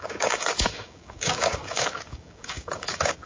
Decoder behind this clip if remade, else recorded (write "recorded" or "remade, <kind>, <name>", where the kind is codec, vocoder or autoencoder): remade, codec, DAC